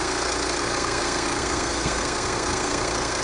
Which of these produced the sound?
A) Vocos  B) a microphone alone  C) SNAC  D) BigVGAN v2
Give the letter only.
C